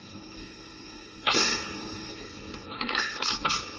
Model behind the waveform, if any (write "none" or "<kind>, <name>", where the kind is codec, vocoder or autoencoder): codec, SNAC